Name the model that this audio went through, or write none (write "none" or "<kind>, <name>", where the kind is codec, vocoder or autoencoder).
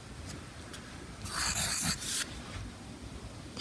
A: none